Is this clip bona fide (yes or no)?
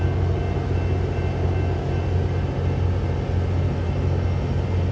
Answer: yes